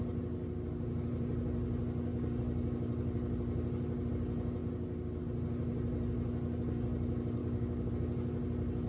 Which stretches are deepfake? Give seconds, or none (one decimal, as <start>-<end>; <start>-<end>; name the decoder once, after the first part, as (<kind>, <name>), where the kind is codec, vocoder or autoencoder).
7.4-7.9 (codec, DAC)